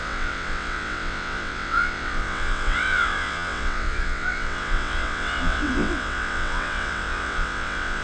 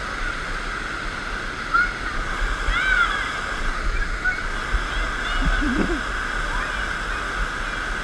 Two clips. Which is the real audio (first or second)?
second